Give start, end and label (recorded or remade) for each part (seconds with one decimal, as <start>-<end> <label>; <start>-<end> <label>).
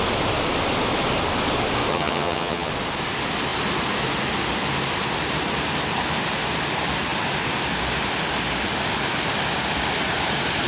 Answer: 0.0-1.9 recorded; 1.9-2.7 remade; 2.7-10.7 recorded